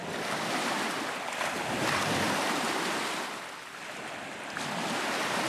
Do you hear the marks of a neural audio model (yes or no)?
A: no